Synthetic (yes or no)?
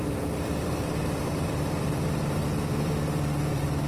yes